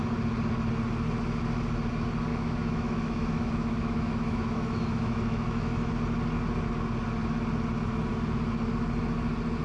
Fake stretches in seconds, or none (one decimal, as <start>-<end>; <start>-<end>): 2.3-5.9